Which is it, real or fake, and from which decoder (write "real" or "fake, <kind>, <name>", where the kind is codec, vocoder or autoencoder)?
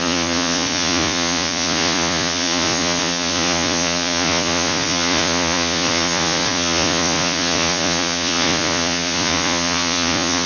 fake, vocoder, Vocos